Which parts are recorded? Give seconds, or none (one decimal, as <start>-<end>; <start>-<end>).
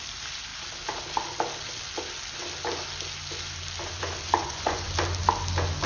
0.0-4.4; 4.9-5.9